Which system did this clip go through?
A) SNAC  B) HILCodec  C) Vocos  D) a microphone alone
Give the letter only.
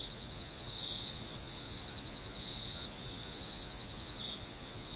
C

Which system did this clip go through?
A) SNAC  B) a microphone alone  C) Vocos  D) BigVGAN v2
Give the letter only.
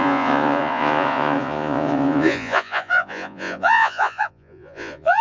C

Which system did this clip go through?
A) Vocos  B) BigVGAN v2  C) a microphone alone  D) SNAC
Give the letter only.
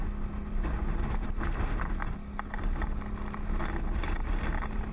C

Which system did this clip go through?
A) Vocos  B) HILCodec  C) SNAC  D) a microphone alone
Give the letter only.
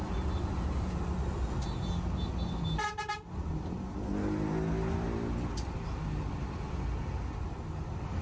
D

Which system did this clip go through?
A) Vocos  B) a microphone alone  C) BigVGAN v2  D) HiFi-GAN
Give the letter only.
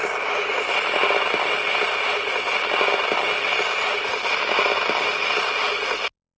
B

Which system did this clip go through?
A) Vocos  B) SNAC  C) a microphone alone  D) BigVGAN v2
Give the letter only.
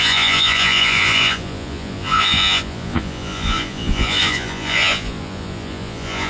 A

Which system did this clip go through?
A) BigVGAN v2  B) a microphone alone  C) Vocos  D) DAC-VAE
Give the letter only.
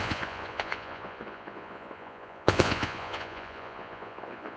C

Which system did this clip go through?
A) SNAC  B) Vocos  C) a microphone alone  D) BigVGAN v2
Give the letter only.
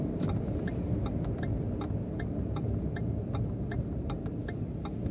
C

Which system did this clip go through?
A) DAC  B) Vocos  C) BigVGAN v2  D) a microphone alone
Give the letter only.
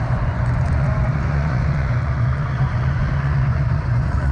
B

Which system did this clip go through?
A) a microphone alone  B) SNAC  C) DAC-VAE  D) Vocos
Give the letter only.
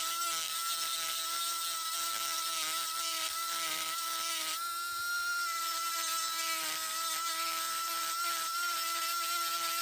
A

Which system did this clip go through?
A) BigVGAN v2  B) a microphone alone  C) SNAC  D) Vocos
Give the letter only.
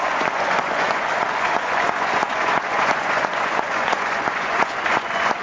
D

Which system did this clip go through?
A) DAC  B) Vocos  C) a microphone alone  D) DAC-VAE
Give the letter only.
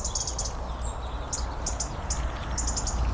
C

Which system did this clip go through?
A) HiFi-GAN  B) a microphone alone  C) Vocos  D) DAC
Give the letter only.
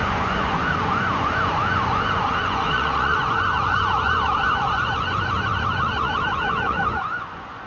C